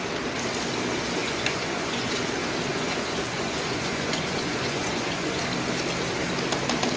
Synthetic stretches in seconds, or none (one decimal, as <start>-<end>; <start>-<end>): 1.2-2.3; 2.7-5.4